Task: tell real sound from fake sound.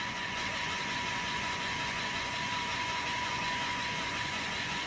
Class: fake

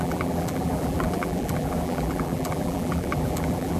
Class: fake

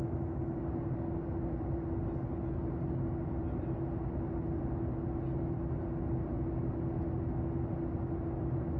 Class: real